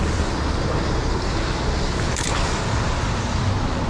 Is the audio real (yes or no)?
yes